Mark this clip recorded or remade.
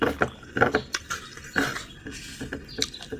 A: recorded